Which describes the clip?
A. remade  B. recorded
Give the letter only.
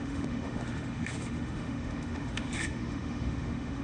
A